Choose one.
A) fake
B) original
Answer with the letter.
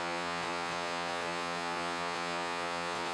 A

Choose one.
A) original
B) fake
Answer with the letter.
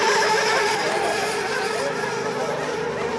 A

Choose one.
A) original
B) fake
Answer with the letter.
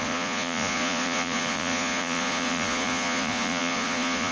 B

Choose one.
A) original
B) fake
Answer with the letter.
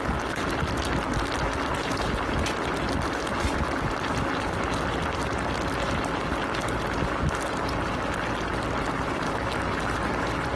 A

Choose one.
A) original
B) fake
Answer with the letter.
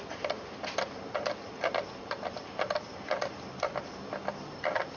A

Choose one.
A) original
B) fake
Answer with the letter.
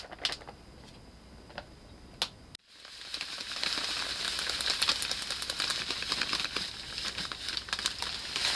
A